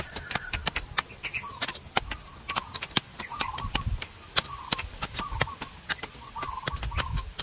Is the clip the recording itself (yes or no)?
yes